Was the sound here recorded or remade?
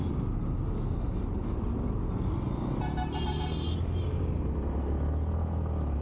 recorded